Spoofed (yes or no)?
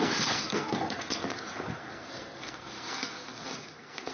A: yes